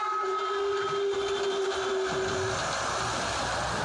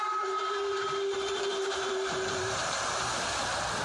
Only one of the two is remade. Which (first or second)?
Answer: second